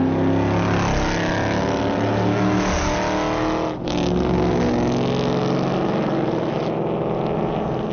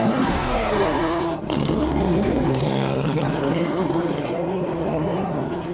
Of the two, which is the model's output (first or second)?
second